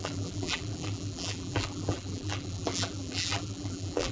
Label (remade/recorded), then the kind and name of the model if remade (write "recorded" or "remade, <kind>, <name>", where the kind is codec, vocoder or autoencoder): remade, vocoder, BigVGAN v2